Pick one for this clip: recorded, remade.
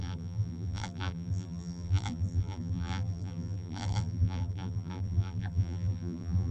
remade